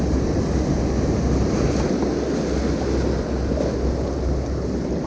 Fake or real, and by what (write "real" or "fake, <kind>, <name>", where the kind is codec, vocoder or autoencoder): real